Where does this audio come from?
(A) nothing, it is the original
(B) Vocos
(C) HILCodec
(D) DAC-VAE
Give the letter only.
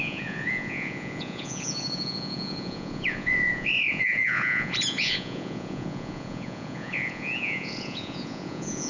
B